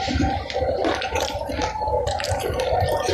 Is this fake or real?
fake